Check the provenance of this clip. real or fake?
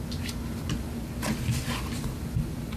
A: real